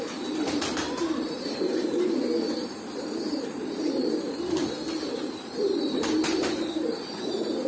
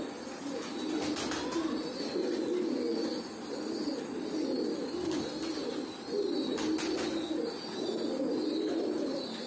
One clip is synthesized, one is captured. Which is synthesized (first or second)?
first